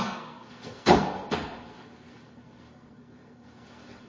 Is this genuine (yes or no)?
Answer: no